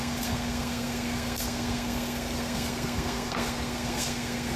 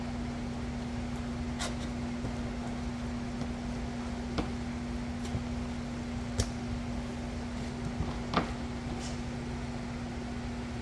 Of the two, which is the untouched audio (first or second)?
second